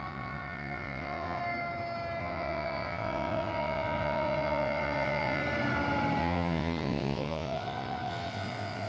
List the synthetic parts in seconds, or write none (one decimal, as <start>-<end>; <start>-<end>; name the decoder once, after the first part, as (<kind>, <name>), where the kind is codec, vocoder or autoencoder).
0.0-1.4 (vocoder, WaveNeXt); 2.2-5.4; 6.2-8.9